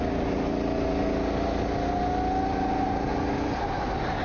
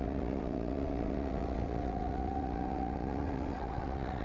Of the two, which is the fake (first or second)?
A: second